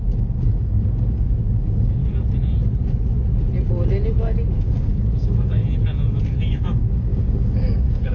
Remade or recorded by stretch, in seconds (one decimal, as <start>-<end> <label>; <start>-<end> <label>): 0.0-2.0 remade; 2.0-4.6 recorded; 4.6-5.6 remade; 5.6-6.5 recorded; 6.5-8.1 remade